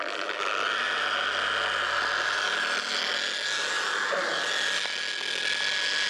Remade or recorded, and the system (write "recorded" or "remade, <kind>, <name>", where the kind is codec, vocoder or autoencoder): recorded